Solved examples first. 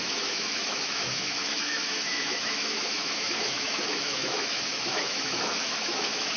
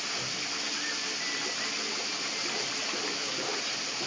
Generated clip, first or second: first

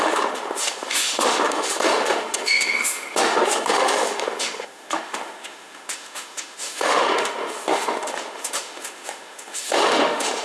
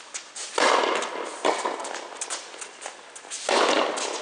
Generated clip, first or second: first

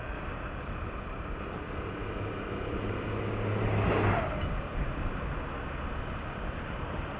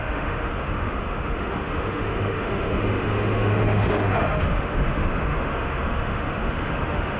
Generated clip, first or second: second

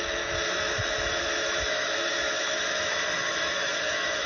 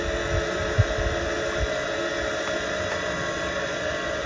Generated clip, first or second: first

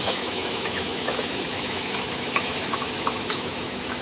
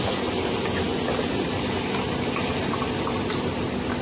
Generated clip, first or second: first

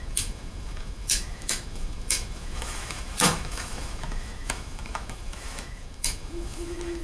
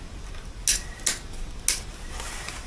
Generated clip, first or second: first